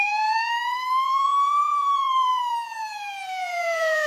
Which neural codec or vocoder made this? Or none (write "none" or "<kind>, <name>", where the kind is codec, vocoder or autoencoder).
vocoder, Vocos